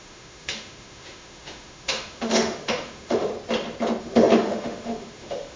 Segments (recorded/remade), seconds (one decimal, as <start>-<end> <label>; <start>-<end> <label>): 0.0-3.3 remade; 3.3-4.0 recorded; 4.0-5.6 remade